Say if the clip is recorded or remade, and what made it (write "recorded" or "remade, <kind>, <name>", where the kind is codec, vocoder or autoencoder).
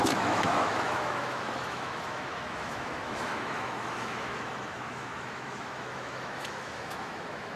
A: remade, autoencoder, DAC-VAE